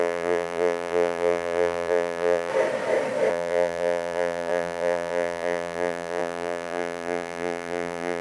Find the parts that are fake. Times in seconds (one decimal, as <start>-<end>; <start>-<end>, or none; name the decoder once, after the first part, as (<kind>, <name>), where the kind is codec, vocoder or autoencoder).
0.0-2.5 (vocoder, BigVGAN v2); 3.3-8.2